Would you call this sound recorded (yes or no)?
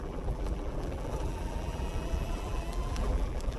no